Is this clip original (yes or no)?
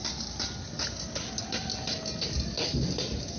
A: yes